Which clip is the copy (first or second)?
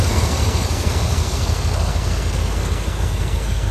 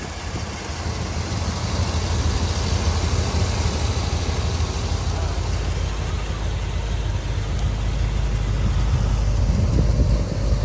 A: first